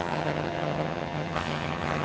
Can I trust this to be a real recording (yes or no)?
no